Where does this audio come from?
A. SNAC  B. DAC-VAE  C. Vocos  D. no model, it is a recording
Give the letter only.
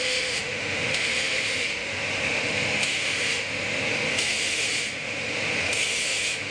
B